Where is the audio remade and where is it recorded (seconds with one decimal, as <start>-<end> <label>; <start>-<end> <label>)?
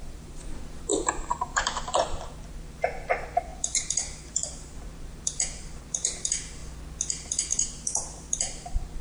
0.0-6.6 remade; 6.6-7.1 recorded; 7.1-9.0 remade